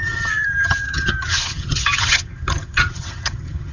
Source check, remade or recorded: remade